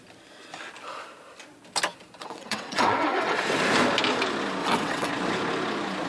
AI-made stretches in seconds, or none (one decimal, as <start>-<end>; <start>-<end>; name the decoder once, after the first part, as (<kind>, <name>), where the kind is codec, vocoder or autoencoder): 2.2-3.4 (vocoder, WaveNeXt); 4.6-5.1